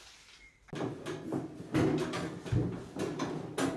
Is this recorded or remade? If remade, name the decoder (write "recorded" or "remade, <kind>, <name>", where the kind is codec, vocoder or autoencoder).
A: recorded